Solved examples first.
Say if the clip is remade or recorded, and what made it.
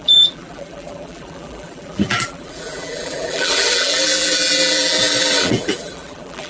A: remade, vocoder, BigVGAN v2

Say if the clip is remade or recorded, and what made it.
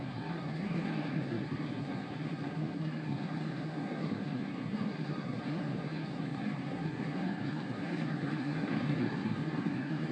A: remade, codec, SNAC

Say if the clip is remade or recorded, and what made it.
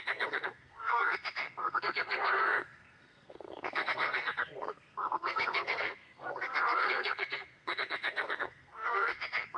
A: remade, codec, SNAC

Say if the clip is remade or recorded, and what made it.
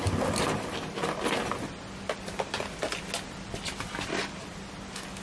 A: recorded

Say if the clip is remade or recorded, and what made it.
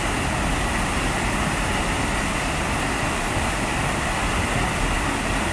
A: recorded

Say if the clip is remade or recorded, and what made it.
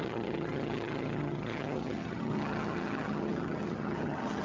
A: remade, vocoder, HiFi-GAN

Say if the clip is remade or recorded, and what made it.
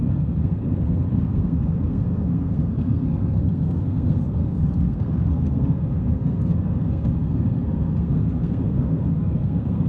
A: remade, codec, SNAC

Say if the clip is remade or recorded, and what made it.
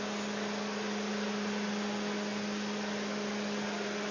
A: recorded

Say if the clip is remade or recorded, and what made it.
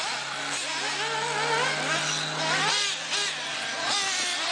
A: recorded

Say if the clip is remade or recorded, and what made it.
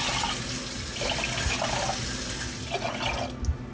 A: recorded